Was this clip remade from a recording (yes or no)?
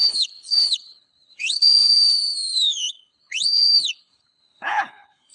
yes